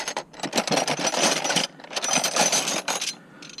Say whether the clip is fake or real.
fake